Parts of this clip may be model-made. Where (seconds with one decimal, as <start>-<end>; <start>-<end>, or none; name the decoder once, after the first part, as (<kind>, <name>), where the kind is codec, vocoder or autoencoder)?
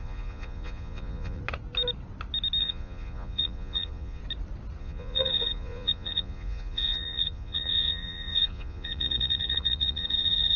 0.0-1.4 (vocoder, Vocos); 2.6-4.2; 4.8-10.6